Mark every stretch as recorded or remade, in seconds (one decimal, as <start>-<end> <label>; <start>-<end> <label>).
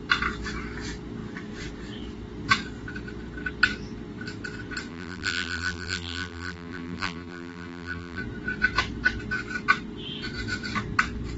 0.0-4.9 recorded; 4.9-8.2 remade; 8.2-11.4 recorded